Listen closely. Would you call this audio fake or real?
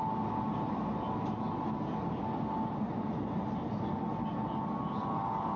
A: real